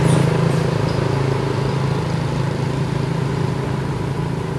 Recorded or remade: recorded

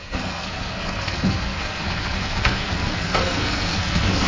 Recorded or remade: remade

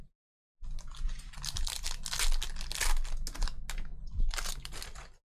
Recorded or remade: recorded